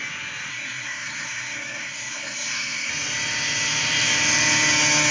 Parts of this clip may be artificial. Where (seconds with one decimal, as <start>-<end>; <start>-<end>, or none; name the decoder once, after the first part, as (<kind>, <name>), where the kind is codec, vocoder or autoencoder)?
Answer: 0.5-2.9 (codec, SNAC)